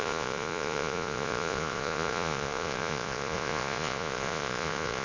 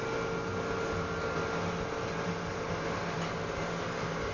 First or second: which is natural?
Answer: second